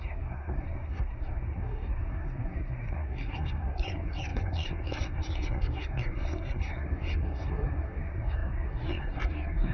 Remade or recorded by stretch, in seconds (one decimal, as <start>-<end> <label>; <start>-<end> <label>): 0.0-9.7 remade